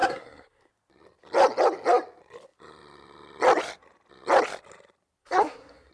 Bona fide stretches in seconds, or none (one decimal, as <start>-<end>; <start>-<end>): 0.7-5.2